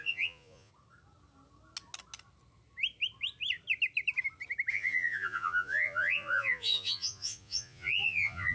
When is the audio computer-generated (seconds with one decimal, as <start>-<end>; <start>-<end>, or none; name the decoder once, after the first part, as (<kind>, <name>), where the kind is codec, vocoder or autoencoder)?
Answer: 0.0-0.7 (vocoder, Vocos); 4.7-8.5

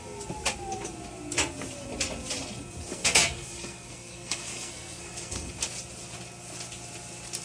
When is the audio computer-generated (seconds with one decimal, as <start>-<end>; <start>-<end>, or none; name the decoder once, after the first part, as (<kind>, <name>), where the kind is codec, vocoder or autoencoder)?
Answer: 2.9-5.5 (codec, SNAC)

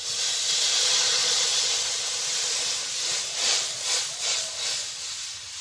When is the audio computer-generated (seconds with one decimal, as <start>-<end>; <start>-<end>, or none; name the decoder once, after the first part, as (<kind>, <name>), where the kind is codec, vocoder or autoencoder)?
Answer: 1.2-1.7 (vocoder, Vocos); 3.4-4.5

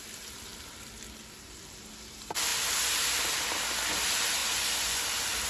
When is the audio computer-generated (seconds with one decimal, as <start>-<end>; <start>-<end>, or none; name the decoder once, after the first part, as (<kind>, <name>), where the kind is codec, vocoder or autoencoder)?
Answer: 4.4-5.0 (vocoder, Vocos)